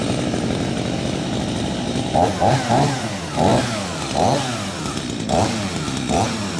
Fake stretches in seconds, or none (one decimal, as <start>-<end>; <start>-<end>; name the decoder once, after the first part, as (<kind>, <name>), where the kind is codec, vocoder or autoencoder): 0.0-3.5 (vocoder, BigVGAN v2); 4.5-6.6